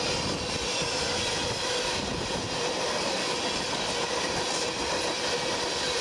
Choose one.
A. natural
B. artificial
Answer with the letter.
A